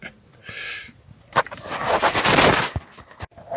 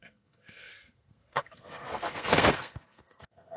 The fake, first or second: second